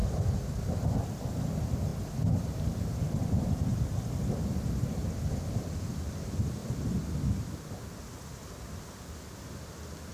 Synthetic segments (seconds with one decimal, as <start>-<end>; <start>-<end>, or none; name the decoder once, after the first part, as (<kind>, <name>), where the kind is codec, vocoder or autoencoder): 1.4-6.6 (vocoder, BigVGAN v2); 9.0-10.1

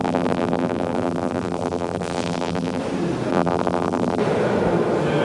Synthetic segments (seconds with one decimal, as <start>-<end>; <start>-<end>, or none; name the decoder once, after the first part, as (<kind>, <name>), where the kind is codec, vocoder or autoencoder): 0.0-2.8 (vocoder, BigVGAN v2); 3.3-4.2

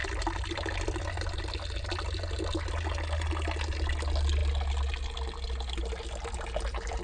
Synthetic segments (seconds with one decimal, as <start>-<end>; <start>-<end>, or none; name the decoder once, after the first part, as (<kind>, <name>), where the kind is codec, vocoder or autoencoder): 0.0-1.0 (vocoder, BigVGAN v2)

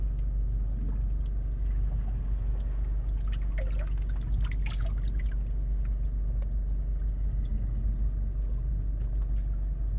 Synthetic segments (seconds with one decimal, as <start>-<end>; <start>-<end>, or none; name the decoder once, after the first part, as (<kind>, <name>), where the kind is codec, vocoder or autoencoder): none

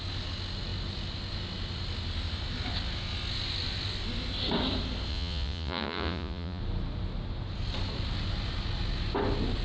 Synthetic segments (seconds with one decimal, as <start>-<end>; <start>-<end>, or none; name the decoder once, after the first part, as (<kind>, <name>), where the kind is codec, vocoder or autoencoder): 5.1-6.6 (vocoder, Vocos)

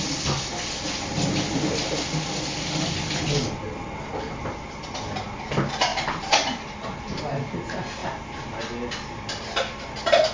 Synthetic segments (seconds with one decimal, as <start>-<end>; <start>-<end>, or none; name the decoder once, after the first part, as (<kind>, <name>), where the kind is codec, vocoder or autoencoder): 5.9-7.2 (vocoder, BigVGAN v2); 8.0-8.6

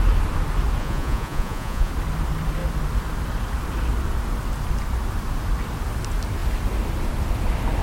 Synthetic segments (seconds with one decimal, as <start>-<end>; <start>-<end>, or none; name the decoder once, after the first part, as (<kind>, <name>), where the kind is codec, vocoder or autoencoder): 0.8-1.9 (vocoder, Vocos)

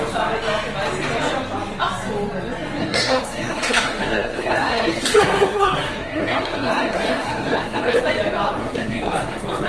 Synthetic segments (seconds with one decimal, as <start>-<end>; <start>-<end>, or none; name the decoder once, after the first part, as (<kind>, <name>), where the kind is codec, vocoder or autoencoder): 2.8-8.0 (codec, SNAC); 8.6-9.7